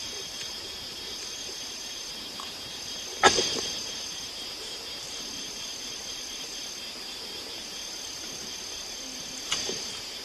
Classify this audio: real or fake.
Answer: fake